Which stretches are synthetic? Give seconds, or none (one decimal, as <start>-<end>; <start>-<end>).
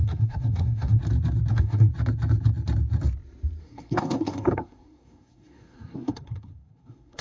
0.0-1.0; 1.5-1.9; 3.6-7.2